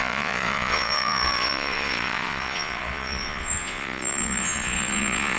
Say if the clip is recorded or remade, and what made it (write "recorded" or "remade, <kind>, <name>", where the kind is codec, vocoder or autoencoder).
remade, vocoder, Vocos